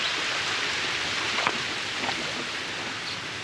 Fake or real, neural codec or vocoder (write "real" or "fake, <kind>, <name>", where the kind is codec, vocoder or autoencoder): real